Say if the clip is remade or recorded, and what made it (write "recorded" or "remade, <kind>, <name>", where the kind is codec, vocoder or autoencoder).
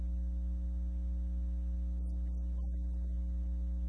recorded